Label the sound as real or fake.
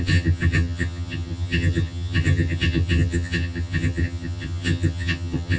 fake